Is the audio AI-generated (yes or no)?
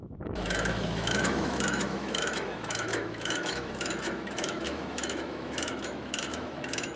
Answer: yes